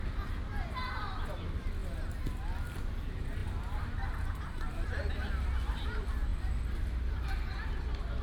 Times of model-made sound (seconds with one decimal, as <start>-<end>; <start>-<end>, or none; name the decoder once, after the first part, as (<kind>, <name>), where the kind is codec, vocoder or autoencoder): none